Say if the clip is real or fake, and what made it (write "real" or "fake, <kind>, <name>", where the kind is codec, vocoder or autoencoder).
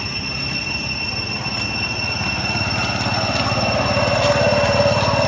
real